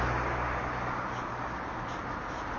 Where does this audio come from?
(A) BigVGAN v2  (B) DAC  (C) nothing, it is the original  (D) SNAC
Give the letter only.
C